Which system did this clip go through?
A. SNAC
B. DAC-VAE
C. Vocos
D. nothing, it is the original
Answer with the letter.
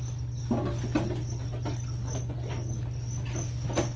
D